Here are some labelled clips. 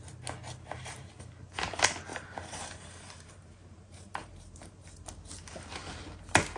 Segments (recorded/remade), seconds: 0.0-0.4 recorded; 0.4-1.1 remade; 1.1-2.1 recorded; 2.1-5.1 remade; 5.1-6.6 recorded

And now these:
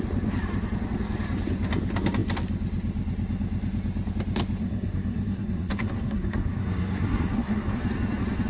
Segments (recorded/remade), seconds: 0.0-4.6 recorded; 4.6-7.8 remade; 7.8-8.5 recorded

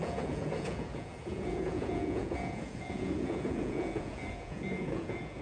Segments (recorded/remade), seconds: 0.0-5.4 remade

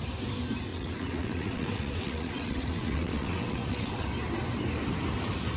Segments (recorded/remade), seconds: 0.0-0.7 recorded; 0.7-4.1 remade; 4.1-5.6 recorded